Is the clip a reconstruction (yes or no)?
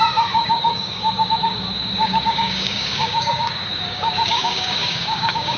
yes